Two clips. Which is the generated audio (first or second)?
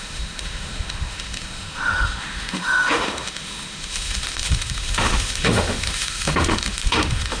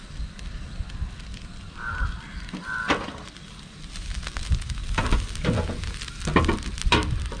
first